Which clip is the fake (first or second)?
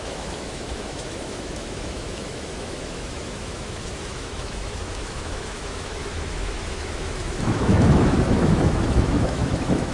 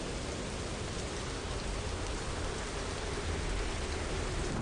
first